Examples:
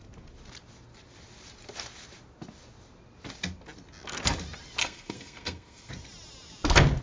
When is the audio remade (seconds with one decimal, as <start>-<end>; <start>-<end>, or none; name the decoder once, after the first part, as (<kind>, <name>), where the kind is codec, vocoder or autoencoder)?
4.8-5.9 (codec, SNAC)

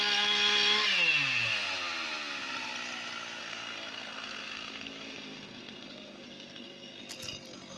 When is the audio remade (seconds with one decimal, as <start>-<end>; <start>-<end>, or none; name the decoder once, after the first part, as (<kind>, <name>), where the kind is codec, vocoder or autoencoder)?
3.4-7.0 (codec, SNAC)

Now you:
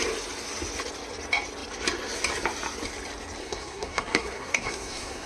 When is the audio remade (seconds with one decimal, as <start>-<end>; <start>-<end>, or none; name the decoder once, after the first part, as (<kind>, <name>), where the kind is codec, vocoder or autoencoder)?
3.4-5.3 (codec, SNAC)

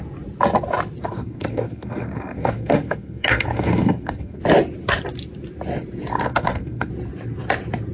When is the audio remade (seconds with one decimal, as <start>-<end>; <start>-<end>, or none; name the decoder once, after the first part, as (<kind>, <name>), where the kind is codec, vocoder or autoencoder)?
1.0-4.4 (codec, SNAC); 6.1-6.9

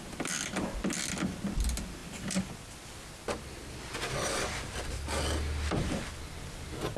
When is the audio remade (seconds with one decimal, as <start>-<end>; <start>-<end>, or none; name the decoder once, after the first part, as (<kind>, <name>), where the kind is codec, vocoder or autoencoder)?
none

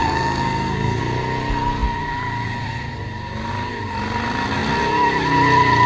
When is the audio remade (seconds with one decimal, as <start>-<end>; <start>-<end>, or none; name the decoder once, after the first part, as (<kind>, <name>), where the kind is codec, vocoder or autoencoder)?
0.0-1.0 (codec, SNAC)

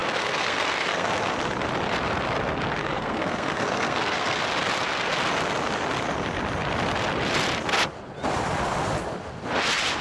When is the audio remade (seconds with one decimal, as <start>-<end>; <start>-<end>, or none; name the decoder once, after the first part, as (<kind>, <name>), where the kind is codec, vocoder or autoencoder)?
0.0-1.1 (codec, SNAC); 2.8-4.4

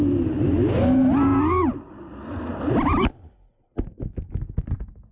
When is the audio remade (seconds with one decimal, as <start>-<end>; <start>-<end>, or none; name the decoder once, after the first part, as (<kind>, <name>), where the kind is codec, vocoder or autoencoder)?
none